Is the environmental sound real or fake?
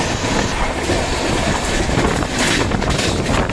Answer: real